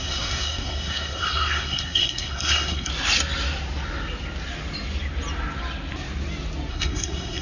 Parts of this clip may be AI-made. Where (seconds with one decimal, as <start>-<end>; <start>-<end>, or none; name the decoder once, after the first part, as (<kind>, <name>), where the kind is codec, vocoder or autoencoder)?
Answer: 0.0-2.9 (codec, SNAC); 6.7-7.4